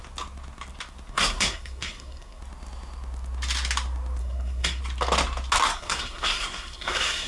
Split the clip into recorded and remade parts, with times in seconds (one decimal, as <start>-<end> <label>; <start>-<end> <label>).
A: 0.0-1.1 recorded; 1.1-2.4 remade; 2.4-4.2 recorded; 4.2-4.8 remade; 4.8-5.7 recorded; 5.7-7.3 remade